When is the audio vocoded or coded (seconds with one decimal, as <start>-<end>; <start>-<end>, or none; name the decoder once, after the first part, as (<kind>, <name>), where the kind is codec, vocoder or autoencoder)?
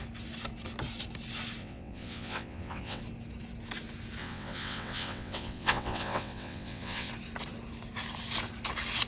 1.6-3.0 (vocoder, WaveNeXt); 4.2-7.1